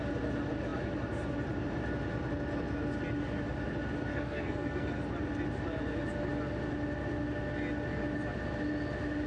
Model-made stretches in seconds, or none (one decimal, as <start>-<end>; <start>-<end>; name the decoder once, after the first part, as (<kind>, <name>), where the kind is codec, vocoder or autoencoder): 4.1-4.9 (codec, SNAC)